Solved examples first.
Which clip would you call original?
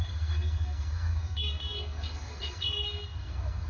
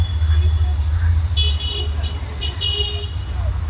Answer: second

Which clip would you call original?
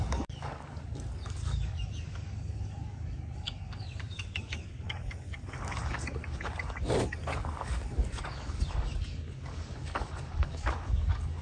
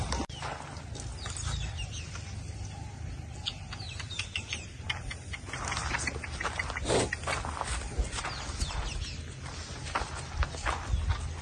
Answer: second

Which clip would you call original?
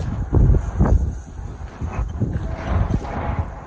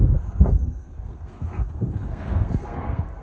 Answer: first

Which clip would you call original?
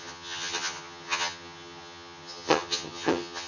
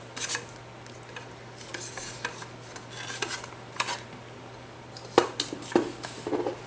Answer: second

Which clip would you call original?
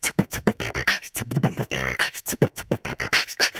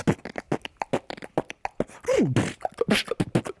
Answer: second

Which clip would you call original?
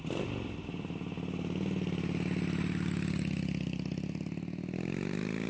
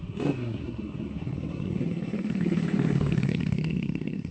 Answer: first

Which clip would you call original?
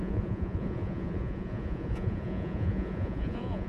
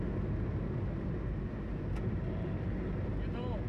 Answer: second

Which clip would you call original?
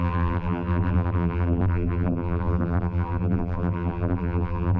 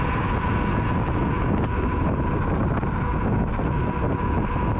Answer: second